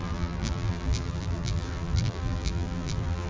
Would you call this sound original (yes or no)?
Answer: no